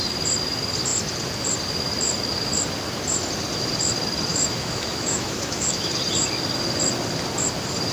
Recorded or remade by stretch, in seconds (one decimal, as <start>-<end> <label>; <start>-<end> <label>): 0.0-4.3 recorded; 4.3-5.9 remade; 5.9-7.9 recorded

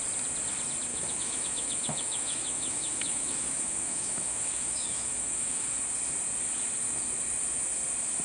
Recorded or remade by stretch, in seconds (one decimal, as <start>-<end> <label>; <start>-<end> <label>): 0.0-0.9 recorded; 0.9-5.8 remade; 5.8-8.2 recorded

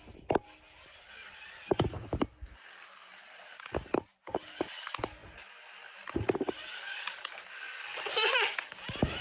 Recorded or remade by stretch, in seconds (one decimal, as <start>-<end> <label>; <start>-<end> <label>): 0.0-9.2 recorded

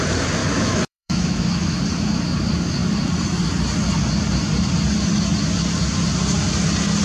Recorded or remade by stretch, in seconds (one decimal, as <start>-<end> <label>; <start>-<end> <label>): 0.0-0.4 recorded; 0.4-1.8 remade; 1.8-7.0 recorded